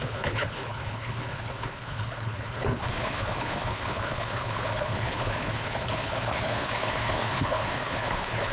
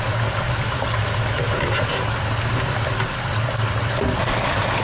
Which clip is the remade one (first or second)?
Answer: first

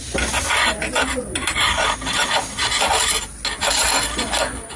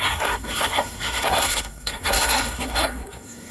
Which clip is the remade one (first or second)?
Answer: second